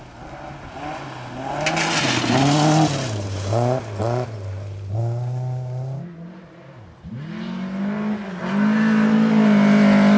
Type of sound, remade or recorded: recorded